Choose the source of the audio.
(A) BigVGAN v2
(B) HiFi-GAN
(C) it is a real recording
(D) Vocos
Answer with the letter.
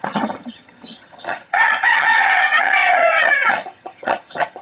B